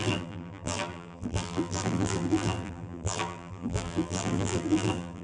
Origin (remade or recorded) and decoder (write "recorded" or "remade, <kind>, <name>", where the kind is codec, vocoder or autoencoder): remade, vocoder, BigVGAN v2